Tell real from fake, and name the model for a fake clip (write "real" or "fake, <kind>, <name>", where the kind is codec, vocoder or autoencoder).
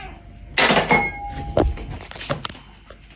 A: real